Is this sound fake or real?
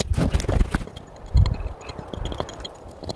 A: real